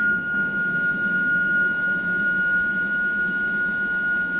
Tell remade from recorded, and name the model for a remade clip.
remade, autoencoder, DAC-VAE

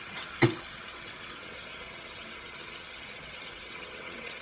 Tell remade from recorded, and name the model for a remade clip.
remade, vocoder, WaveNeXt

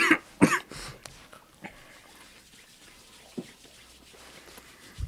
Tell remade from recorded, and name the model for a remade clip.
recorded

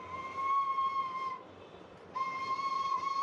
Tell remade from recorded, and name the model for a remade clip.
recorded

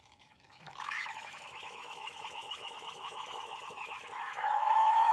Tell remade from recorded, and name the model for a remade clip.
remade, autoencoder, DAC-VAE